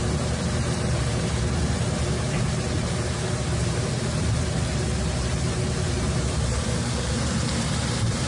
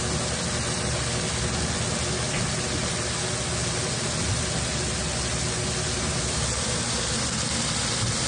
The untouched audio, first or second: second